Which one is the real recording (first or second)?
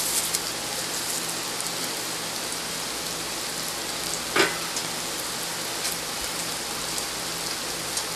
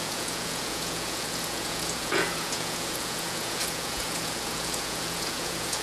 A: first